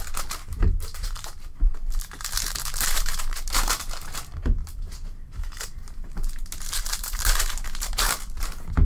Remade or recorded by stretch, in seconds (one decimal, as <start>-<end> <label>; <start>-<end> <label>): 0.0-0.6 recorded; 0.6-3.9 remade; 3.9-4.6 recorded; 4.6-8.2 remade; 8.2-8.8 recorded

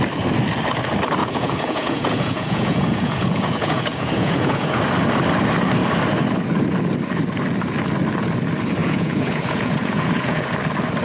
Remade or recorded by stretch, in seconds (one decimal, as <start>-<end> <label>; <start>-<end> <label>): 0.0-1.2 recorded; 1.2-4.8 remade; 4.8-8.8 recorded; 8.8-10.5 remade; 10.5-11.0 recorded

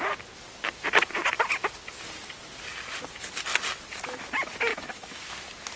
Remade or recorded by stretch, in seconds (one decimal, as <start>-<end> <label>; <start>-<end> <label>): 0.0-4.7 recorded; 4.7-5.3 remade; 5.3-5.8 recorded